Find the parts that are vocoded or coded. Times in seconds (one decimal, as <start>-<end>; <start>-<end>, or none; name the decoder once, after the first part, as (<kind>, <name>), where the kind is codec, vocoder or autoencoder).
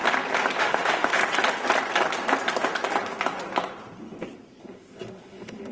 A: 0.6-1.2 (autoencoder, DAC-VAE); 4.6-5.7